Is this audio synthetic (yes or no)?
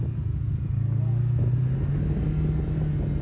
no